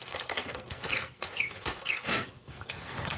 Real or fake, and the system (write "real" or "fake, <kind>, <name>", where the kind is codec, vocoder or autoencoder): fake, codec, SNAC